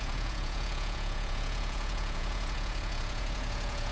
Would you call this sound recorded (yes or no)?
no